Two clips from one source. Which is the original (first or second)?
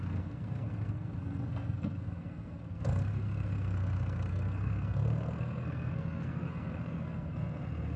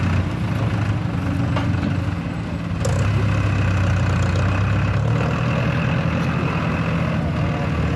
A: second